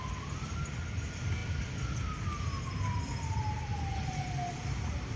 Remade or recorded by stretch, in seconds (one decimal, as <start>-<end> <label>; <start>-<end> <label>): 0.0-5.2 recorded